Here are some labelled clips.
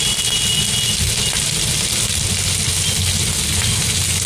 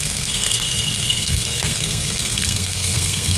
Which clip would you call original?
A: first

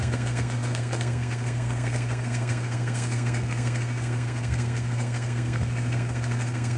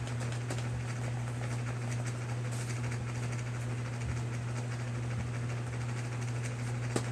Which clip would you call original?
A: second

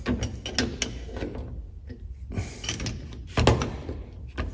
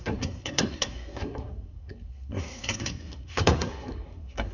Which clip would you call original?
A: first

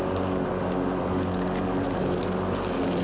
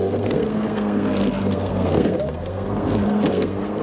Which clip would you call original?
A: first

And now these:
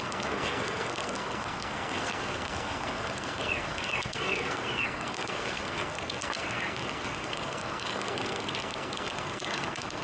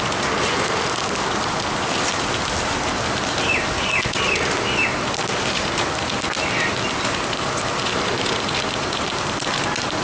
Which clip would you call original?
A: second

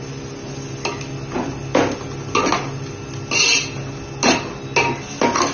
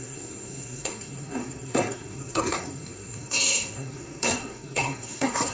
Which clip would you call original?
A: first